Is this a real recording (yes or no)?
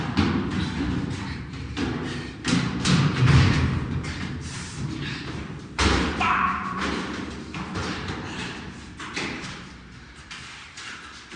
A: no